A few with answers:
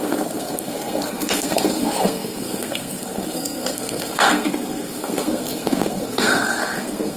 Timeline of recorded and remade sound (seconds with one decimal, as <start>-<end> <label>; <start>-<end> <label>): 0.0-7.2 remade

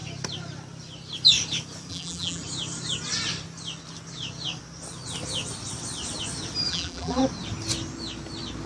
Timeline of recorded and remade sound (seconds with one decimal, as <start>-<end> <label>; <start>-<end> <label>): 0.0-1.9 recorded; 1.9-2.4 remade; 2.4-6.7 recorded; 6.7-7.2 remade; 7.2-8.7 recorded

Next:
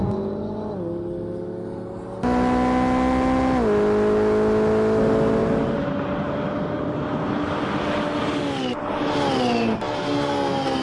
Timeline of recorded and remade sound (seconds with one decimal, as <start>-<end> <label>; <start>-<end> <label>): 0.0-10.8 recorded